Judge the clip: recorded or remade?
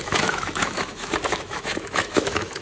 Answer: remade